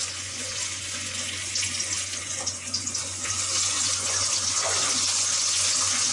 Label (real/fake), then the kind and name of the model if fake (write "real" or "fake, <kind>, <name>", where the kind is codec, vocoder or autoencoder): fake, vocoder, Vocos